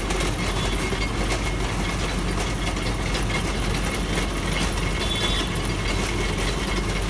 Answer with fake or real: real